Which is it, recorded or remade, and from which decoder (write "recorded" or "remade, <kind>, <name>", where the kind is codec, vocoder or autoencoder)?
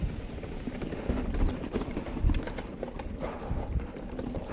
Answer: remade, vocoder, BigVGAN v2